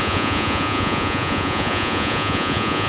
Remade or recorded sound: remade